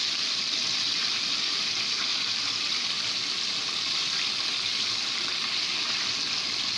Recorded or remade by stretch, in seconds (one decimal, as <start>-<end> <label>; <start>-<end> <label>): 0.0-2.1 recorded; 2.1-3.1 remade; 3.1-4.7 recorded; 4.7-5.6 remade; 5.6-6.8 recorded